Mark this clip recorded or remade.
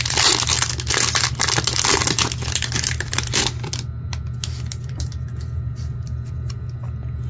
recorded